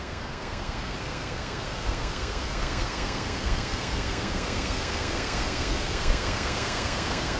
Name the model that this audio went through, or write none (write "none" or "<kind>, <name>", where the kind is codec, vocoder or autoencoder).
codec, SNAC